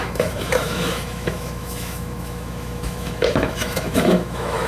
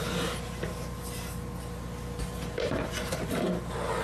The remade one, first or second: first